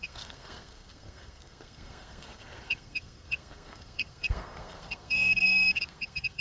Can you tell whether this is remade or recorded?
remade